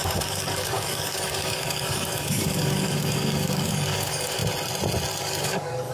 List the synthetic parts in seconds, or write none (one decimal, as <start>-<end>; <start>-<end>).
0.0-4.4; 5.2-5.9